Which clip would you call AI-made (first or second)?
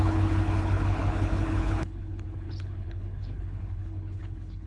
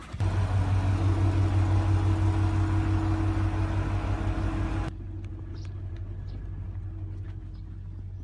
first